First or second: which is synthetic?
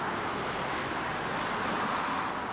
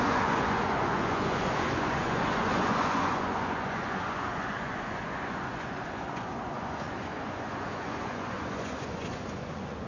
second